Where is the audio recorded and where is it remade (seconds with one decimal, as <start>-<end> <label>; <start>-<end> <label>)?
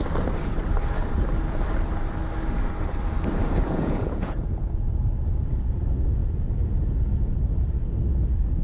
0.0-3.6 recorded; 3.6-4.9 remade; 4.9-8.6 recorded